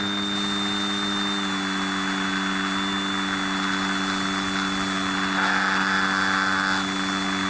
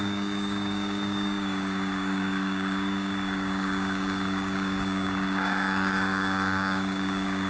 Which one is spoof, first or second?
second